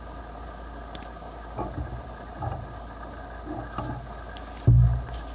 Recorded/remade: recorded